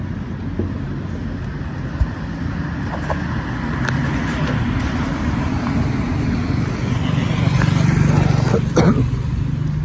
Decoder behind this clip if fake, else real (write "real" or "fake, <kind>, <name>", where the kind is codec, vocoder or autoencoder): real